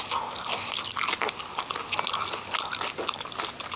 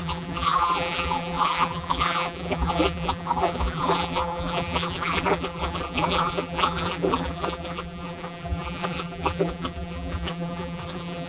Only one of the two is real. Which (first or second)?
first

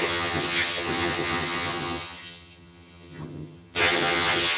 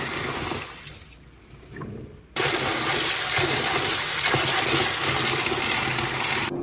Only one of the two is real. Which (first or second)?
second